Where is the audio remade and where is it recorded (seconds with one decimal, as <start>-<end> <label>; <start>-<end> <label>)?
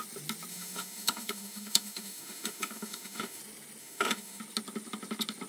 0.0-0.5 recorded; 0.5-3.4 remade; 3.4-3.8 recorded; 3.8-4.4 remade; 4.4-5.5 recorded